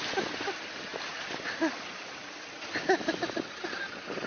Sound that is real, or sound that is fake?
real